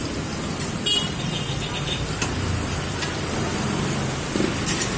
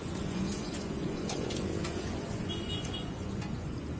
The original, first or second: first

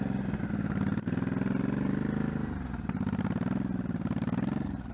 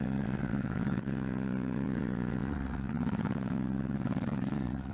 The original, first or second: first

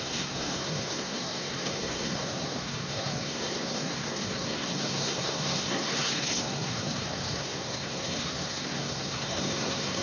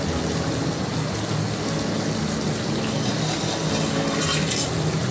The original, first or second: second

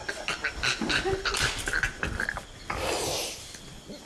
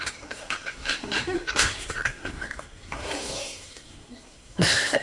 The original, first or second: first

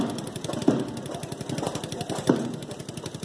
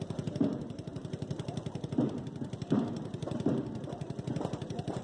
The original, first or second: first